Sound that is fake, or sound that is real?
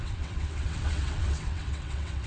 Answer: fake